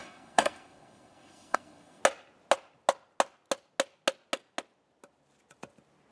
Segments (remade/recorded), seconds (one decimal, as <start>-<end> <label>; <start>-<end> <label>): 0.0-2.0 remade; 2.0-6.1 recorded